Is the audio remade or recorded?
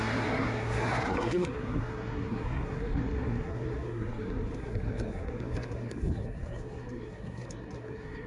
remade